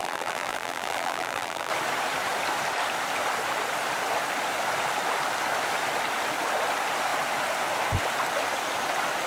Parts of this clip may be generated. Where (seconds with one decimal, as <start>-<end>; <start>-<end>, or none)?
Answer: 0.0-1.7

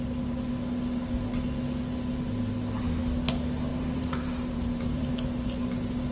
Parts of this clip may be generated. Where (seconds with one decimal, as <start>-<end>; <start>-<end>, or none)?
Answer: 3.7-5.1

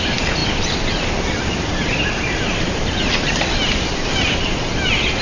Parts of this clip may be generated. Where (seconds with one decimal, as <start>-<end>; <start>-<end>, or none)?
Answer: 0.4-3.5

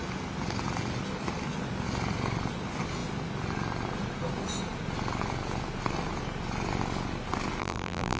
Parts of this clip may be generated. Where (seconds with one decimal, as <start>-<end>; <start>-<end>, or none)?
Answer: 7.6-8.2

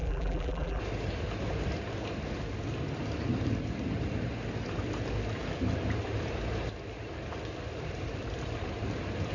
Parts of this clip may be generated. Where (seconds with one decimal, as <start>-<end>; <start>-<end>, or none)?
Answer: 0.0-0.8